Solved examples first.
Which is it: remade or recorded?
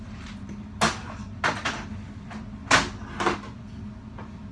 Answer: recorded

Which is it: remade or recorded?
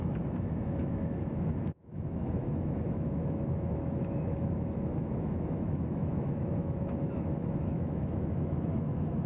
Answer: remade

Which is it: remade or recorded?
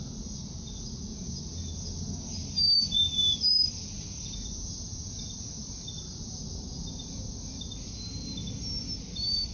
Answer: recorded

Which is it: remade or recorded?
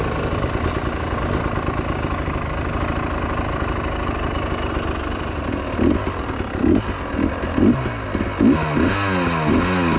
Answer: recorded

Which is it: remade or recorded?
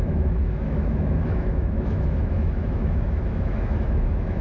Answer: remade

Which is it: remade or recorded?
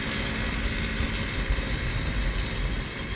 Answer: recorded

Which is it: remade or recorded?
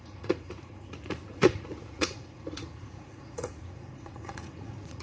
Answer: remade